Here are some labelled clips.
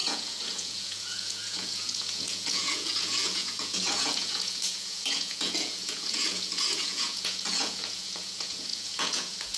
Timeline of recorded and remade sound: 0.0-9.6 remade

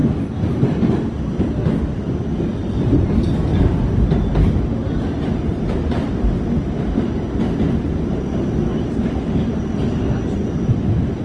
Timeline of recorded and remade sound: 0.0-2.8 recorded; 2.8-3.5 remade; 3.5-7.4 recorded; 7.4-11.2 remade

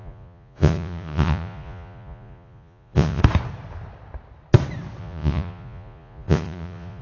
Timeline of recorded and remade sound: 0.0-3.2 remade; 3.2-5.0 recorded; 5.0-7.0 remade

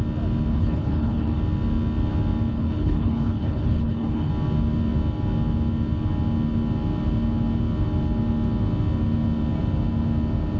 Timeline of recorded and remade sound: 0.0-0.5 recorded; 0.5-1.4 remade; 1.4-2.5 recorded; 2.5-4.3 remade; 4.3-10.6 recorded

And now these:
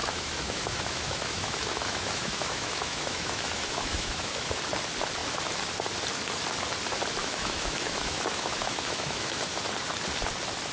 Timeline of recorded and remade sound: 0.0-4.6 remade; 4.6-7.2 recorded; 7.2-9.6 remade; 9.6-10.7 recorded

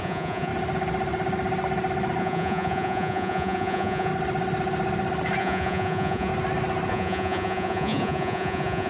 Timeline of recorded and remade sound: 0.0-0.5 remade; 0.5-2.2 recorded; 2.2-4.1 remade; 4.1-5.4 recorded; 5.4-6.3 remade; 6.3-6.9 recorded; 6.9-8.9 remade

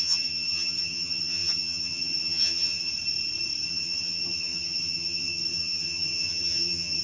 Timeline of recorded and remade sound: 0.0-2.9 remade; 2.9-3.7 recorded; 3.7-7.0 remade

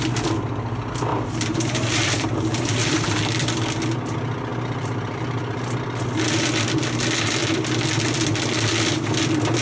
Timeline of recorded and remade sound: 0.0-1.1 recorded; 1.1-3.2 remade; 3.2-9.6 recorded